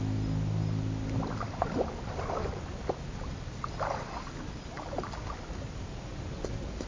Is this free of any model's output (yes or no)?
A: yes